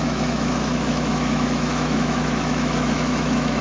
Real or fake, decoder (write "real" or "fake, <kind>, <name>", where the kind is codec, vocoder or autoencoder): fake, autoencoder, DAC-VAE